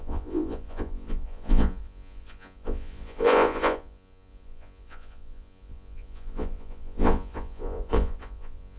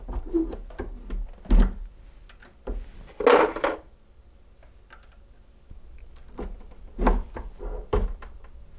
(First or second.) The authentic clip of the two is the second